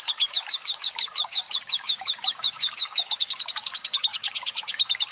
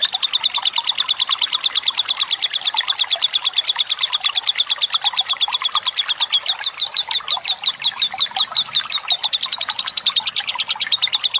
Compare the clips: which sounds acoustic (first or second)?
second